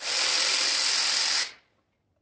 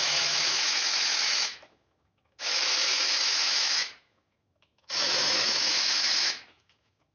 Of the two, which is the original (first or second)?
first